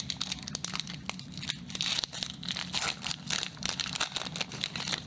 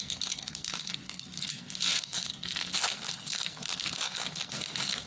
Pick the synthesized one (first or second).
second